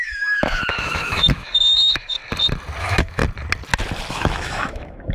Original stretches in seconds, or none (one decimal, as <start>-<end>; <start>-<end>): 2.2-2.8; 3.2-4.1